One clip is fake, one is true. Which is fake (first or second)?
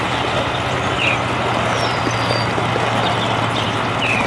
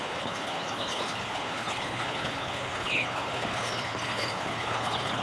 second